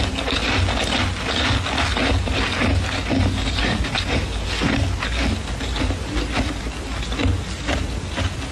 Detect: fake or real real